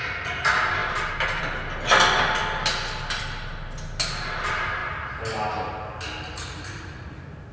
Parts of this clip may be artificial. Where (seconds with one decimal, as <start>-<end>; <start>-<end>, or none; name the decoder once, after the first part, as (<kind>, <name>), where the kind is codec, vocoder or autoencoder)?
none